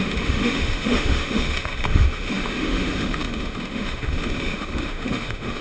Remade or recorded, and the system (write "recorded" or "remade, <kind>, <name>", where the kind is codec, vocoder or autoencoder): remade, autoencoder, DAC-VAE